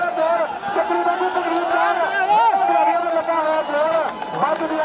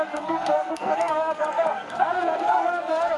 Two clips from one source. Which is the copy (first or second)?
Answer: second